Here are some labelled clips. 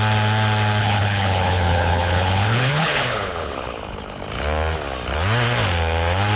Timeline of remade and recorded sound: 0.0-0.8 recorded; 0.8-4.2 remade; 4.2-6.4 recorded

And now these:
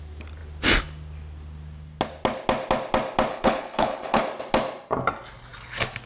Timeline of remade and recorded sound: 0.0-3.3 recorded; 3.3-4.2 remade; 4.2-6.1 recorded

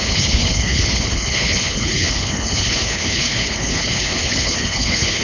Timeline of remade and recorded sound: 0.0-5.2 remade